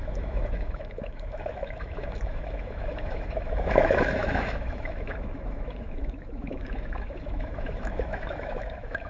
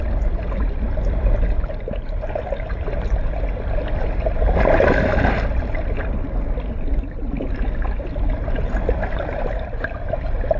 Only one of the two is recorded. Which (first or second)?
second